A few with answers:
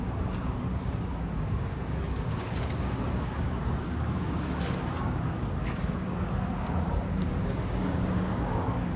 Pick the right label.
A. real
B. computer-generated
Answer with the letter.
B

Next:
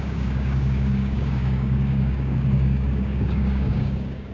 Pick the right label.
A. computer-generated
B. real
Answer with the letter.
A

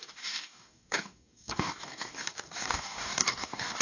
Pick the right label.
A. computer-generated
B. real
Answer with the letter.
A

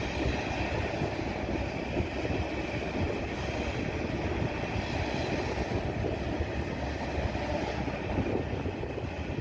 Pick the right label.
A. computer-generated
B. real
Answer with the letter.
B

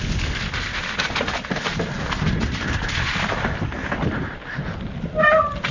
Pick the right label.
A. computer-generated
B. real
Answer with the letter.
B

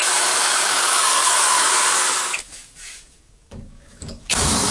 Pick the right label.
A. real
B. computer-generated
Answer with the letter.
B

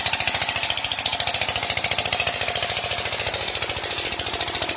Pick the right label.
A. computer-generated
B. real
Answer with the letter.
B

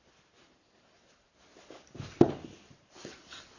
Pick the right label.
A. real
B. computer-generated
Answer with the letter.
A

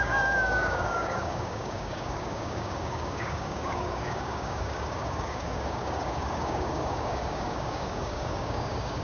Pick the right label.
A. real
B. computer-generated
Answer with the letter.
B